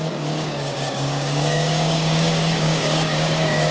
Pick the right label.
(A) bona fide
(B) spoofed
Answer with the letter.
B